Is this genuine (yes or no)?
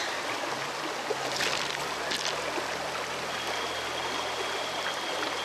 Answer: yes